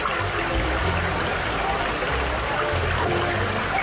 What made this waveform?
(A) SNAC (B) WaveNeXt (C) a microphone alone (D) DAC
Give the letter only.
C